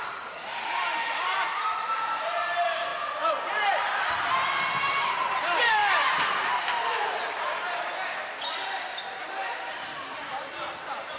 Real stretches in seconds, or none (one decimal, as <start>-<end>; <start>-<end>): none